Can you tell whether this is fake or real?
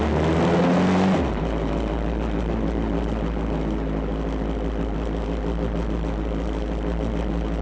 real